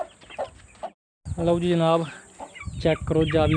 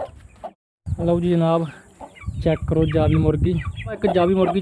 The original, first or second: first